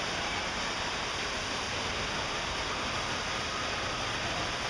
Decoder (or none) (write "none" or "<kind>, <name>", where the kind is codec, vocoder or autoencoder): none